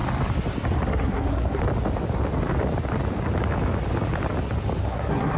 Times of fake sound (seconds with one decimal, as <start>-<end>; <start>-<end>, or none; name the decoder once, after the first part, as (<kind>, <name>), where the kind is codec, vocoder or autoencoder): 0.9-1.6 (codec, SNAC); 4.8-5.4